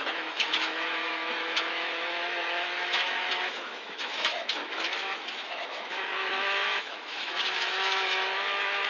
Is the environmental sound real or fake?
fake